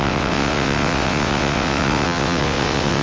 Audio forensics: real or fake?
fake